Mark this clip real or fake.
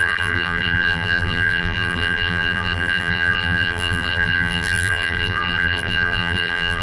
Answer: fake